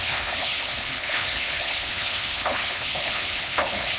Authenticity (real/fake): fake